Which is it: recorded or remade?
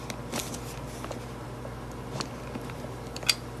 recorded